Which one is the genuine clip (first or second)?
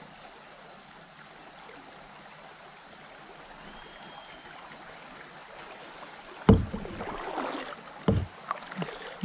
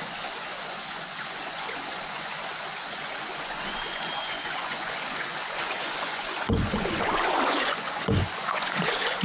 first